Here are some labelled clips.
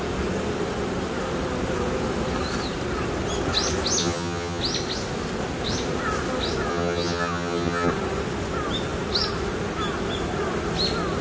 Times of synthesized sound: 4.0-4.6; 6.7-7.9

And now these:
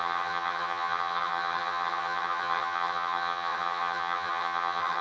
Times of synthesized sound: 0.0-5.0

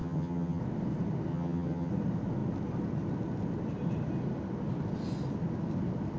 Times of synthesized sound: 0.0-0.6; 1.3-1.9

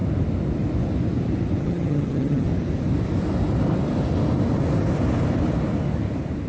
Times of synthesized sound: 1.6-2.5

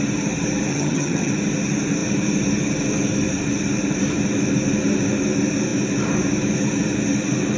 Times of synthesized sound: 0.7-1.3